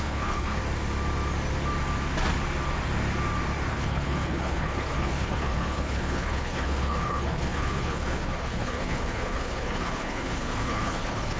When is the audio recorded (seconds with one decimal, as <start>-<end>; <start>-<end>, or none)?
0.6-3.7